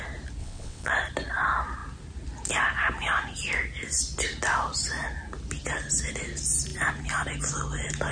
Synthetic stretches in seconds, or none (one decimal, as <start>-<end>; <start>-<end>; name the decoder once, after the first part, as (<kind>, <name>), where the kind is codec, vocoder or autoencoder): 0.4-0.9 (vocoder, WaveNeXt)